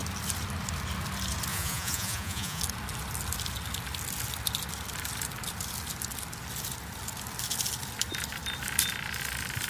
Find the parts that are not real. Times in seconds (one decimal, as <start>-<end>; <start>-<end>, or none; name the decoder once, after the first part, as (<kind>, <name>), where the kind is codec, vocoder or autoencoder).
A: 1.5-2.6 (vocoder, Vocos)